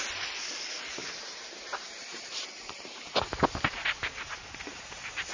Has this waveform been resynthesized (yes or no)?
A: no